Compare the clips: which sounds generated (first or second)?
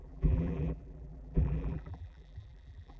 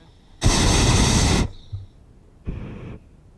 first